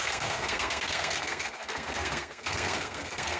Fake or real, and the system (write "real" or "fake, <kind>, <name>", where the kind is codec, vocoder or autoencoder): fake, codec, SNAC